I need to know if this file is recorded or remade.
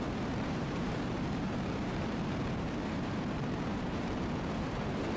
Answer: remade